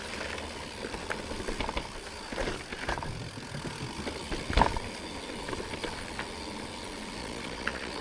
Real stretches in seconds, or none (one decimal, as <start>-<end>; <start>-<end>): 0.0-7.2